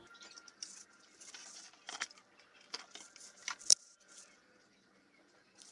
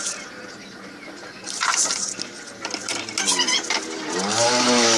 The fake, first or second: first